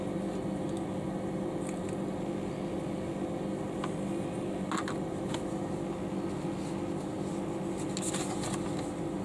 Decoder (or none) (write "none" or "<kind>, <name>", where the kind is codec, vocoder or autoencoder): none